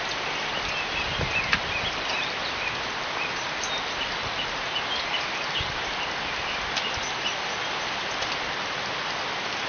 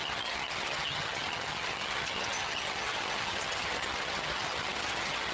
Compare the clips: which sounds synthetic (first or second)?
second